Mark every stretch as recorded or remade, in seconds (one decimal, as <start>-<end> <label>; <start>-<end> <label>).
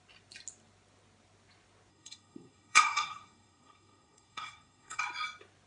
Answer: 0.0-1.9 recorded; 1.9-5.0 remade; 5.0-5.7 recorded